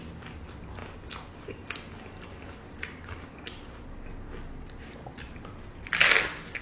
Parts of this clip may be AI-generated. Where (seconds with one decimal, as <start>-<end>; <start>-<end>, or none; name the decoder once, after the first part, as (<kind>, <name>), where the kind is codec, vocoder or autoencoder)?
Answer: none

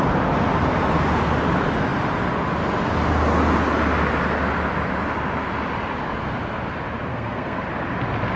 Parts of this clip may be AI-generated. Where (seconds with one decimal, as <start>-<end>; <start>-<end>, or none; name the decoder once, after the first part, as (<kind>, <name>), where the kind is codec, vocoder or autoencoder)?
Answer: 7.1-7.6 (codec, SNAC)

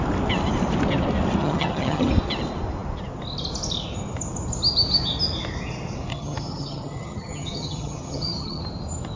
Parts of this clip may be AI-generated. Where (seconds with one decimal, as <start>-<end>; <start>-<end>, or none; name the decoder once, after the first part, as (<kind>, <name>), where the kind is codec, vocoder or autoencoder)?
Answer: 1.4-2.1 (vocoder, HiFi-GAN); 6.1-8.6

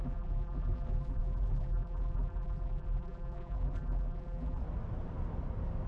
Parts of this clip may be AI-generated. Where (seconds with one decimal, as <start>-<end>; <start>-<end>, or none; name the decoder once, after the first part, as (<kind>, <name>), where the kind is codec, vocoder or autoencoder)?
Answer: 0.0-4.6 (vocoder, BigVGAN v2)

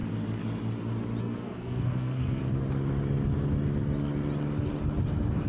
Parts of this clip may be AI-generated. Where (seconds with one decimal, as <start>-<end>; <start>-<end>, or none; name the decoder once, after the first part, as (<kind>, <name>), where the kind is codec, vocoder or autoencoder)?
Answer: 1.2-2.4 (codec, SNAC)

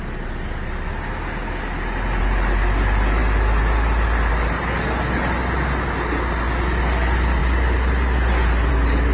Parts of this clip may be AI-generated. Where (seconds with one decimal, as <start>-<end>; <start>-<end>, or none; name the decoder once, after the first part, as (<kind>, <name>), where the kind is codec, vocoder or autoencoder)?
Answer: none